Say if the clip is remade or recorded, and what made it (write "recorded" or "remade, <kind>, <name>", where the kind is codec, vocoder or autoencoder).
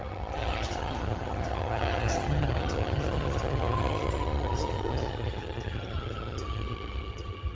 remade, vocoder, HiFi-GAN